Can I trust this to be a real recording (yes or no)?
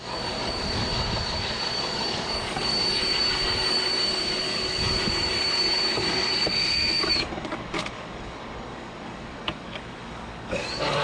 no